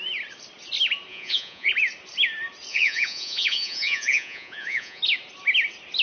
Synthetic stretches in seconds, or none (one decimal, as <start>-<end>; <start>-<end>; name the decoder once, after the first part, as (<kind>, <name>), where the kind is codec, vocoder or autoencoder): 1.1-1.7 (vocoder, Vocos); 2.7-5.0